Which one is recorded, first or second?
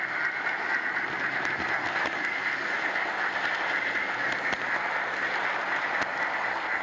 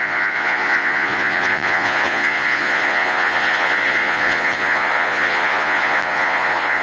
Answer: first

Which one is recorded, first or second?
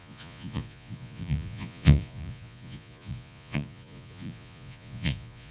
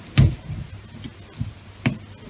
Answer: second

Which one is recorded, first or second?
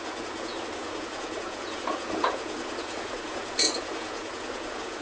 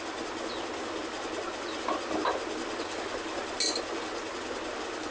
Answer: second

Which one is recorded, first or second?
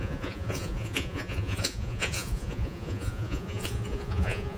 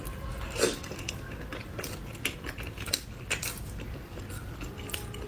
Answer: second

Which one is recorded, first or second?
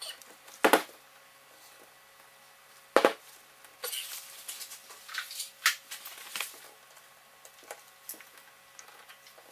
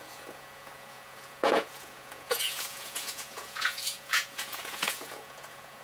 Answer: first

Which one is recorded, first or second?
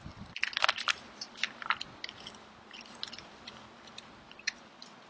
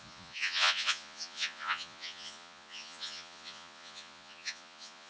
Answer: first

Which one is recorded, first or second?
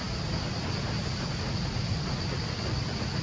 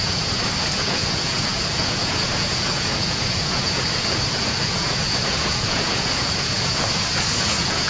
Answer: first